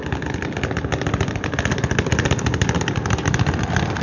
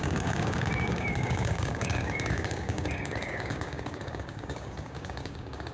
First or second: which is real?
first